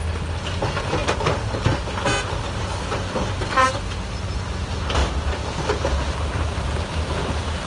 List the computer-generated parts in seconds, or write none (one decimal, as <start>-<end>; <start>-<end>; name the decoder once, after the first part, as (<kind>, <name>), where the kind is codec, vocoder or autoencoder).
1.0-1.5 (vocoder, BigVGAN v2); 5.0-5.9